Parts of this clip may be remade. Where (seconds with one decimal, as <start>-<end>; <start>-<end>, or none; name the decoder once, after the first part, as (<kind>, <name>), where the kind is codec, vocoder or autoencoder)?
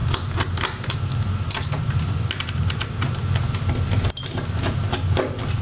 none